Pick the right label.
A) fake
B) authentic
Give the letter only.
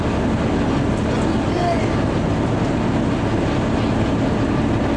B